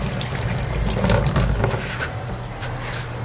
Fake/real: real